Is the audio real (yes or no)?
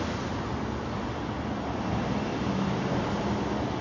yes